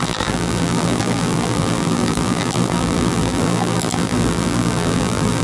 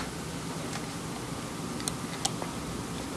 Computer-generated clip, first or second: first